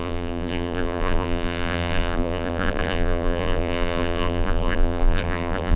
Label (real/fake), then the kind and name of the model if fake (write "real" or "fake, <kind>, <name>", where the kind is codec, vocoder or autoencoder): fake, vocoder, BigVGAN v2